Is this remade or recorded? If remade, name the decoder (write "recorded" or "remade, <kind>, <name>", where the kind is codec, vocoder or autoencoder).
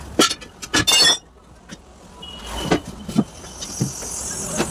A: recorded